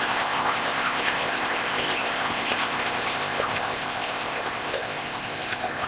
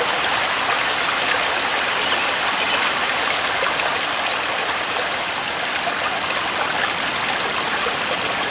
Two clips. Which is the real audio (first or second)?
second